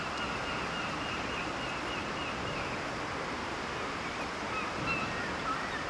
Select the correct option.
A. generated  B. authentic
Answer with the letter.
B